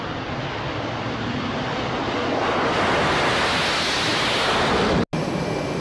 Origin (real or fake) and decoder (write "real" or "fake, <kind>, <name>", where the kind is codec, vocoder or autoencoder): real